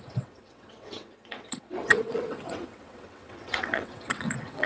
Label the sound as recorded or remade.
remade